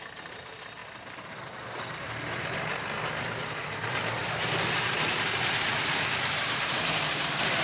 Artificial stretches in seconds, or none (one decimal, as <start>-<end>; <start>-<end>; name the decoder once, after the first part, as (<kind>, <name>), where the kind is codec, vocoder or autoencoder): 0.0-0.8 (vocoder, BigVGAN v2); 3.6-7.6